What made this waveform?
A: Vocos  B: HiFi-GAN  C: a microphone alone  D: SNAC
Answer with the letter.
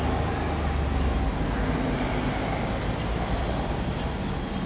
C